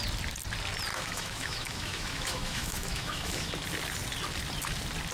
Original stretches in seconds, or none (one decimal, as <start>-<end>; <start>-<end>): 0.0-0.9; 3.5-5.1